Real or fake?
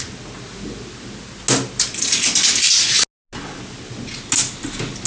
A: real